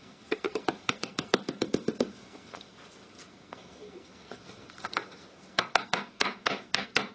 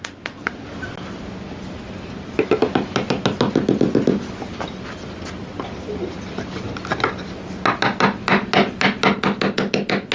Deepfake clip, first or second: first